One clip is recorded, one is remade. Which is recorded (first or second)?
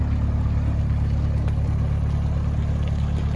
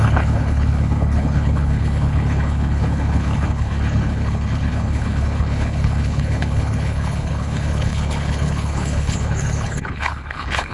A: first